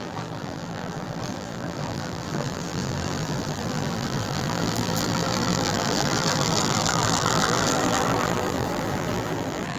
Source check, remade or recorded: remade